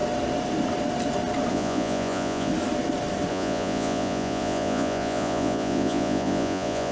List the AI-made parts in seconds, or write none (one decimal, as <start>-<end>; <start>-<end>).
1.5-2.5; 3.3-6.9